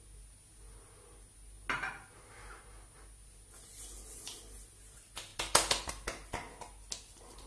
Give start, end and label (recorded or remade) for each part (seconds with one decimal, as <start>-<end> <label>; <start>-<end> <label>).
0.0-5.3 recorded; 5.3-5.9 remade; 5.9-7.5 recorded